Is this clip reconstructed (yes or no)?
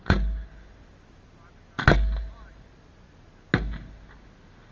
no